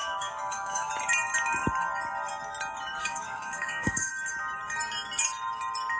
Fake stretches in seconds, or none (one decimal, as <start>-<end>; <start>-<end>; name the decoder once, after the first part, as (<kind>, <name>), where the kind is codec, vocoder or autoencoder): 0.0-0.9 (codec, DAC); 3.0-4.1